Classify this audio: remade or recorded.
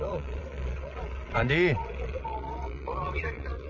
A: remade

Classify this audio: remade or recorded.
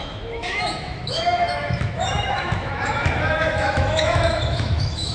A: remade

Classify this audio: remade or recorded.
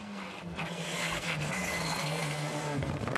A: remade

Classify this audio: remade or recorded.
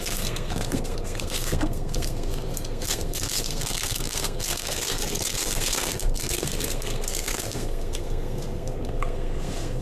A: remade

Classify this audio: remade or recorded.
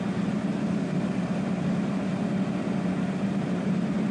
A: recorded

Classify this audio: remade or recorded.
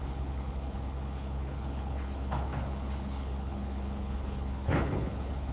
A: remade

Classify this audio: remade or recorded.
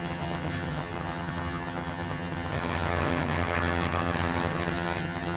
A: remade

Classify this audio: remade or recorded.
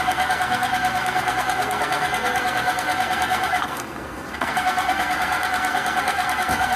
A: remade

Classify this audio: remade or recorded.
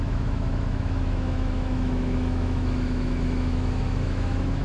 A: remade